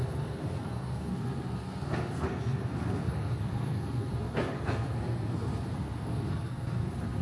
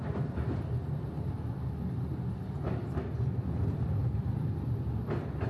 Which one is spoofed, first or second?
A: first